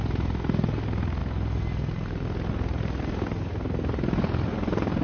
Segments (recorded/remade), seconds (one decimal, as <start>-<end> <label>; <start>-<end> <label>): 0.0-5.0 recorded